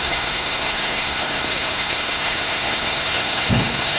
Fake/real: fake